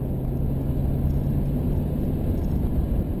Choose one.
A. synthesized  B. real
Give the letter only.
B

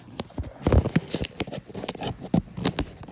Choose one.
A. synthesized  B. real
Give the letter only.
B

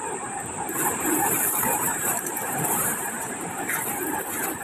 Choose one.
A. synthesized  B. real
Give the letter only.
A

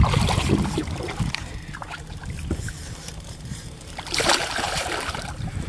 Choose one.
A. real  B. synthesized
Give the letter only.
B